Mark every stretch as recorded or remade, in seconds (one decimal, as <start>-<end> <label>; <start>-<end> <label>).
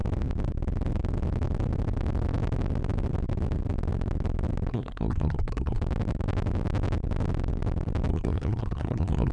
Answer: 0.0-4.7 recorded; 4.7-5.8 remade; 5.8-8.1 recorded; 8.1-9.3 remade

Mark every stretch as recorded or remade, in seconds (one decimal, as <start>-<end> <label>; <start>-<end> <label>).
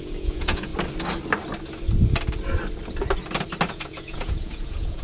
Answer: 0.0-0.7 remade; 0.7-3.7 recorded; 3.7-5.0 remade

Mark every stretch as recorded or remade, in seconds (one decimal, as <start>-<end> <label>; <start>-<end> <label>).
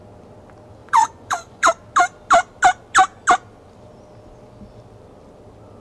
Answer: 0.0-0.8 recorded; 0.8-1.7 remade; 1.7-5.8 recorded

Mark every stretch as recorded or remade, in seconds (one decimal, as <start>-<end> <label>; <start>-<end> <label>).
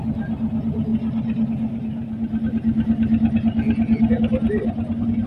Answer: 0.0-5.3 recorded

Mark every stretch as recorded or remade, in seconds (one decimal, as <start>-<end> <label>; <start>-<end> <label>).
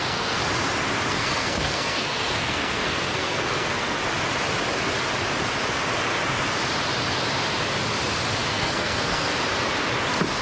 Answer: 0.0-0.4 remade; 0.4-1.1 recorded; 1.1-4.0 remade; 4.0-8.5 recorded; 8.5-9.3 remade; 9.3-10.4 recorded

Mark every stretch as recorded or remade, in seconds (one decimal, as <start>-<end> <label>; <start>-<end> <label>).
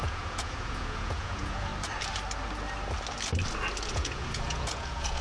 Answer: 0.0-1.7 remade; 1.7-3.9 recorded; 3.9-5.2 remade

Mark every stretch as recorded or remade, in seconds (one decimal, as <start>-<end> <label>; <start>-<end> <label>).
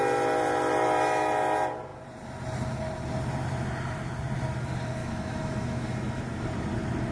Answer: 0.0-5.0 recorded; 5.0-6.2 remade; 6.2-7.1 recorded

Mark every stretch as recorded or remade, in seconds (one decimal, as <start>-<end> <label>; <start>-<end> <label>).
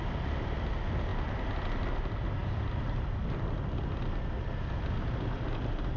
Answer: 0.0-6.0 recorded